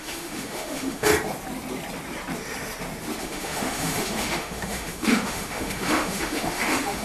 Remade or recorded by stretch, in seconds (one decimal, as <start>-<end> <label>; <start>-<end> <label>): 0.0-1.1 remade; 1.1-3.2 recorded; 3.2-7.0 remade